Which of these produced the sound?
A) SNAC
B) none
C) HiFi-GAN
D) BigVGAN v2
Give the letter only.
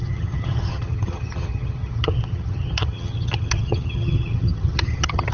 C